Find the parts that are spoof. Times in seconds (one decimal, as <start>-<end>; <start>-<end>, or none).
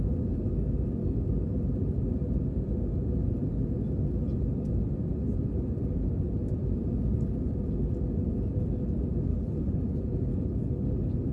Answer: 9.3-9.8; 10.3-10.9